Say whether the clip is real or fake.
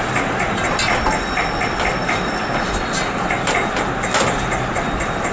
real